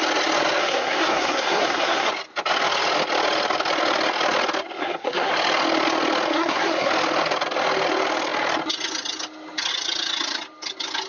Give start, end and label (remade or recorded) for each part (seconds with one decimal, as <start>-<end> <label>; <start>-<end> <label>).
0.0-0.6 recorded; 0.6-2.1 remade; 2.1-4.8 recorded; 4.8-5.3 remade; 5.3-6.3 recorded; 6.3-6.9 remade; 6.9-11.1 recorded